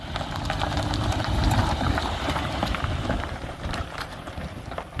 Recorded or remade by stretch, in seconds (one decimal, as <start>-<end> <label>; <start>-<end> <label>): 0.0-1.6 recorded; 1.6-4.6 remade; 4.6-5.0 recorded